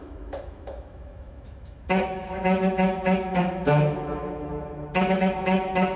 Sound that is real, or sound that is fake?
fake